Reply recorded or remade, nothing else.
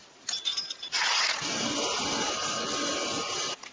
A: recorded